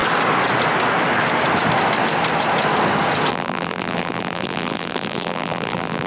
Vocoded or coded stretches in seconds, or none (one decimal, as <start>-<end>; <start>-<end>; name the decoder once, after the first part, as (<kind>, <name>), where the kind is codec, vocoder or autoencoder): 3.3-6.1 (vocoder, BigVGAN v2)